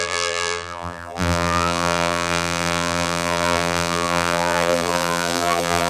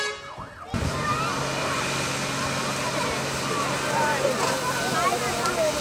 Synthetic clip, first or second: first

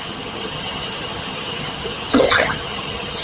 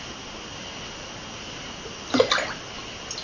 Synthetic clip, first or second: first